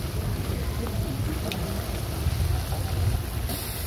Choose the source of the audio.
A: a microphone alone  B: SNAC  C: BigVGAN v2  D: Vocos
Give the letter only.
A